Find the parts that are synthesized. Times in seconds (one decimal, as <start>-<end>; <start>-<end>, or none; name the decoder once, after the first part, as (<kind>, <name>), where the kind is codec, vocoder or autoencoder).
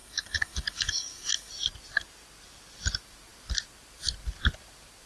0.0-1.5 (codec, DAC)